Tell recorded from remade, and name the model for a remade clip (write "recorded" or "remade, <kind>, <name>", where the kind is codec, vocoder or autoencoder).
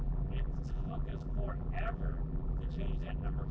remade, vocoder, BigVGAN v2